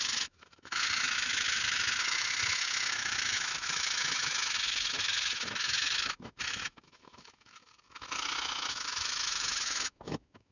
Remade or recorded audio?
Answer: remade